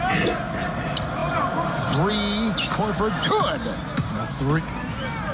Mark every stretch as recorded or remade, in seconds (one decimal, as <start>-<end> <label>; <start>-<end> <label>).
0.0-3.8 recorded; 3.8-4.4 remade; 4.4-5.3 recorded